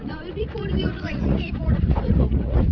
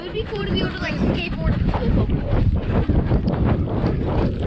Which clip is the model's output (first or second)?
first